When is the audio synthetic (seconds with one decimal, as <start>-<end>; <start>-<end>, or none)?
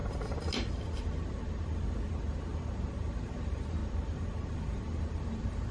3.4-3.8; 5.3-5.7